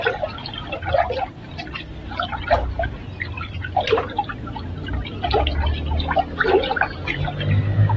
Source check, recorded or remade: recorded